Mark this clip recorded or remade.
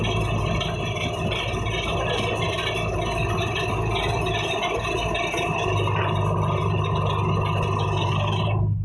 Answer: recorded